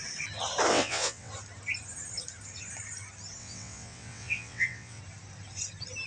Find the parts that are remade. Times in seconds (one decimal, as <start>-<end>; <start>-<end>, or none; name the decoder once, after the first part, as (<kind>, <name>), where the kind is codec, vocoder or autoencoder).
0.7-1.3 (vocoder, WaveNeXt); 3.4-5.0